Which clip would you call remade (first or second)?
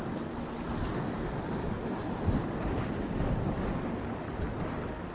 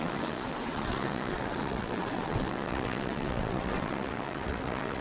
second